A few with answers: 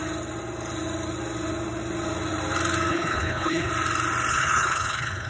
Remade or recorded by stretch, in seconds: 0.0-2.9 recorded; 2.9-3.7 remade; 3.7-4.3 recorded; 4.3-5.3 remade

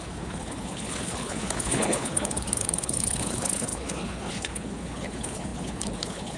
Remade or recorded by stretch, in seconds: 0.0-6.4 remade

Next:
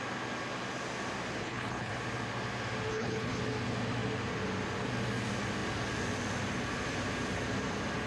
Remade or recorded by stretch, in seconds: 0.0-1.4 recorded; 1.4-1.9 remade; 1.9-2.9 recorded; 2.9-3.4 remade; 3.4-8.1 recorded

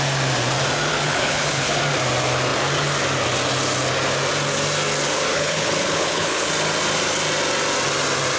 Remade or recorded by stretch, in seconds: 0.0-0.9 recorded; 0.9-1.8 remade; 1.8-5.3 recorded; 5.3-6.5 remade; 6.5-8.4 recorded

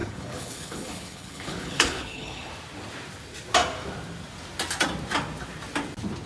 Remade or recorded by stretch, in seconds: 0.0-2.5 remade; 2.5-6.3 recorded

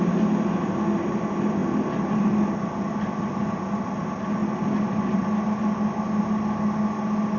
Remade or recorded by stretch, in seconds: 0.0-7.4 recorded